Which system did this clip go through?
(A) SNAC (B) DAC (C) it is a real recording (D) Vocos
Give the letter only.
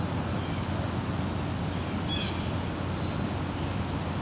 C